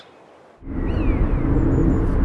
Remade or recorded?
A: recorded